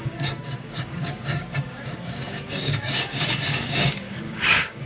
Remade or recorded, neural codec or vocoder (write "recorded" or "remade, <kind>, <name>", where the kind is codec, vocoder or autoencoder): remade, codec, DAC